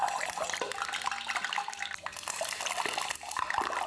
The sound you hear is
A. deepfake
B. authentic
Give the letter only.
B